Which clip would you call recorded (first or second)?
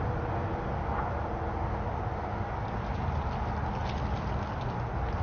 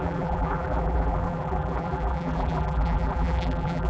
first